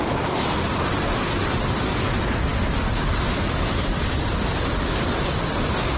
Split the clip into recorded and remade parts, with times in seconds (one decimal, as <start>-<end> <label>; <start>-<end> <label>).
0.0-2.5 remade; 2.5-3.5 recorded; 3.5-6.0 remade